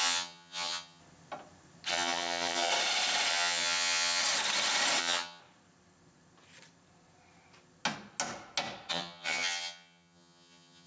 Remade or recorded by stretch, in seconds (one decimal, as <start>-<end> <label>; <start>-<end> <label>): 0.0-1.0 remade; 1.0-1.9 recorded; 1.9-2.7 remade; 2.7-3.3 recorded; 3.3-4.2 remade; 4.2-5.0 recorded; 5.0-5.4 remade; 5.4-8.9 recorded; 8.9-10.9 remade